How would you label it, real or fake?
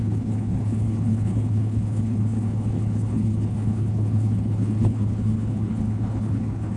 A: fake